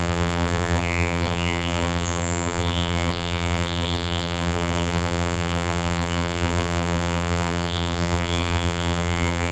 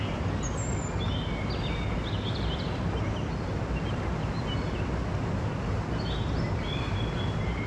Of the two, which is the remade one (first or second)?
first